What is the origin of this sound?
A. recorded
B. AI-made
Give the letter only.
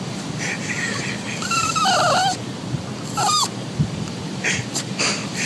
A